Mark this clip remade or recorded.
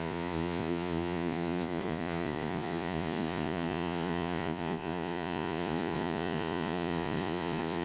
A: remade